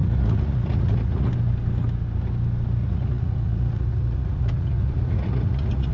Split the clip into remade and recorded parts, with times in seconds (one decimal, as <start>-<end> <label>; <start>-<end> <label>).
0.0-1.3 remade; 1.3-2.8 recorded; 2.8-5.9 remade